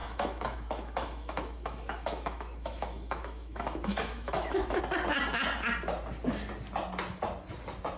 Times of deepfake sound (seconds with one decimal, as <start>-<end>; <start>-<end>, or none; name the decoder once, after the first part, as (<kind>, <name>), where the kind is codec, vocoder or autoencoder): 0.0-4.8 (autoencoder, DAC-VAE)